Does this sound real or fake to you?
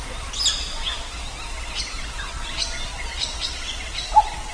real